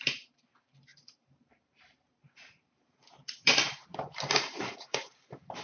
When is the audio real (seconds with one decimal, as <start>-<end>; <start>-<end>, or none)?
none